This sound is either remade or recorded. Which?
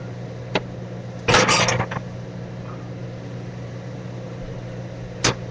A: recorded